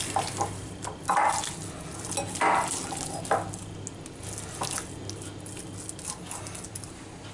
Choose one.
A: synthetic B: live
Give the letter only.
B